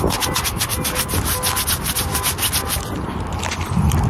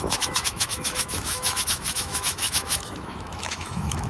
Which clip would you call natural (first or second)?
first